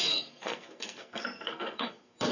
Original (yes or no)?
no